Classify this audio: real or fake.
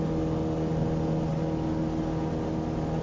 real